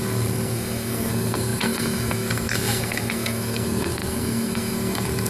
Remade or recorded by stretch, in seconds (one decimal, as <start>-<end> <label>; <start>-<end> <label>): 0.0-5.3 remade